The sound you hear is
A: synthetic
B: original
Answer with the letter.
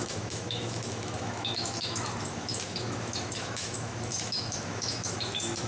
A